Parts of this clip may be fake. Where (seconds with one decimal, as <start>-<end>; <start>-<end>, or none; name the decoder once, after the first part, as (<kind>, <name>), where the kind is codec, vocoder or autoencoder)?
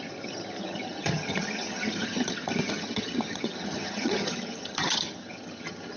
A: 0.0-6.0 (vocoder, HiFi-GAN)